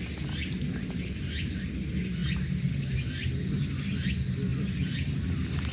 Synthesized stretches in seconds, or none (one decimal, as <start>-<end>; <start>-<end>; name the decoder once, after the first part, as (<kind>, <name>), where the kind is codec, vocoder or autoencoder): none